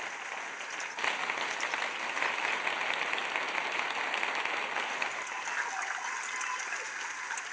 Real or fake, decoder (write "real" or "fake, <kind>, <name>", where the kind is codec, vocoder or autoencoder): real